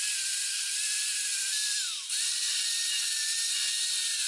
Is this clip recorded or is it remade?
recorded